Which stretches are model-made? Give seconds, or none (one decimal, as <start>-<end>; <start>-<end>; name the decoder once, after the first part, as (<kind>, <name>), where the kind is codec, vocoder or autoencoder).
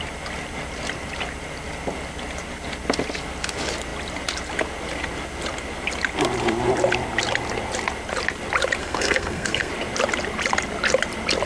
8.8-9.7 (codec, SNAC)